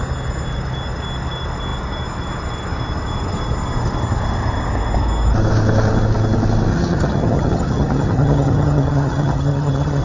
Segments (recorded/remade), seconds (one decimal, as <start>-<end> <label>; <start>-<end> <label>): 0.0-6.7 recorded; 6.7-10.0 remade